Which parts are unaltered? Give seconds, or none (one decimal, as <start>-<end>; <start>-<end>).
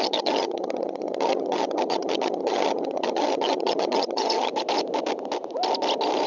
4.5-6.3